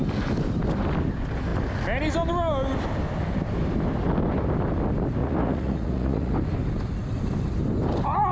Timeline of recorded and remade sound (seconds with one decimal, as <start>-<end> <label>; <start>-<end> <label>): 0.0-5.2 recorded; 5.2-6.3 remade; 6.3-8.3 recorded